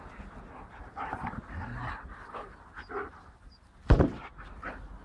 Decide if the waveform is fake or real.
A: real